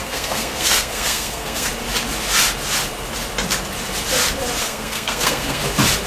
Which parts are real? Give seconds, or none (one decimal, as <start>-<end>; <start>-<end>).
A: 1.7-4.6; 5.6-6.1